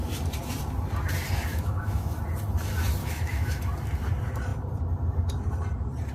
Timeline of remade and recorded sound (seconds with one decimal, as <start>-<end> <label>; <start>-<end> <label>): 0.0-1.5 recorded; 1.5-2.2 remade; 2.2-3.0 recorded; 3.0-3.6 remade; 3.6-6.1 recorded